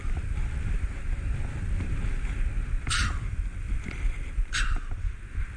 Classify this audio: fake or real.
real